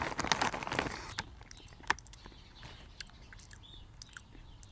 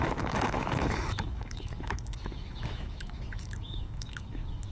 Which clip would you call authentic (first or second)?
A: first